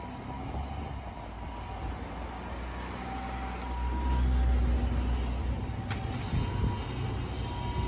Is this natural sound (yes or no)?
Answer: yes